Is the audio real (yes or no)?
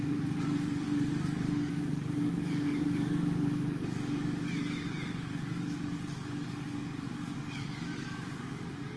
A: no